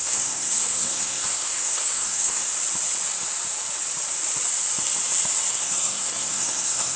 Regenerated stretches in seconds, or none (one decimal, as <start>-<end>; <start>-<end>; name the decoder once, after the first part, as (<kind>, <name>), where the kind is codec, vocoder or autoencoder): 0.0-2.5 (codec, SNAC); 5.5-7.0